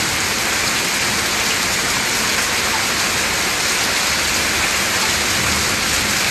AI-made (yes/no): no